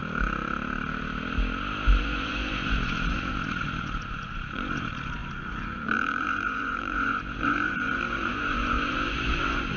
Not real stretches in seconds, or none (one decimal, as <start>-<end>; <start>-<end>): 2.0-9.8